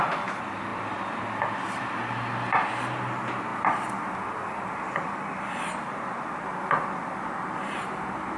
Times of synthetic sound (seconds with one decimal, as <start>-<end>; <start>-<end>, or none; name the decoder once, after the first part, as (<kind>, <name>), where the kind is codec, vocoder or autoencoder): none